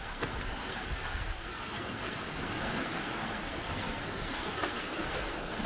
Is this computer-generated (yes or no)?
yes